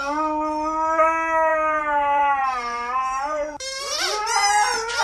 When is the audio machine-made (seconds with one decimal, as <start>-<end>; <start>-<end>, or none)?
1.5-4.5